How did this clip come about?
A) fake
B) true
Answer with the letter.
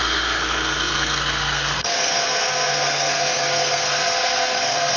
A